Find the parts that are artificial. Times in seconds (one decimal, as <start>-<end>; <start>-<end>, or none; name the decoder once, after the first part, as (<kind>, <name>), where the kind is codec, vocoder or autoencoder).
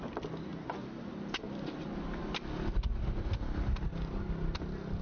none